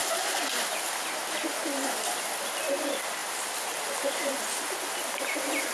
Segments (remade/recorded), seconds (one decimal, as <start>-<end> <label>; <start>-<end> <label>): 0.0-5.7 recorded